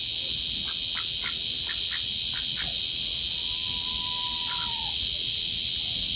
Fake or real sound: real